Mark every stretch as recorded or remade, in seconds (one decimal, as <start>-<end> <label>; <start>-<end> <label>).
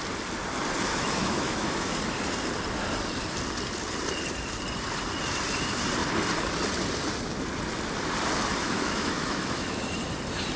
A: 0.0-0.9 recorded; 0.9-1.9 remade; 1.9-8.6 recorded; 8.6-9.8 remade; 9.8-10.6 recorded